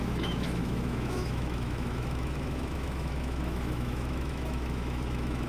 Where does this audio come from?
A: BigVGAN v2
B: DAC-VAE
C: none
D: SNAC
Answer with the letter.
B